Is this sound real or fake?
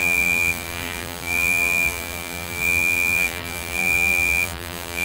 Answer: fake